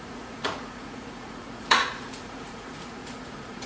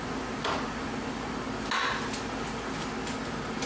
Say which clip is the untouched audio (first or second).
second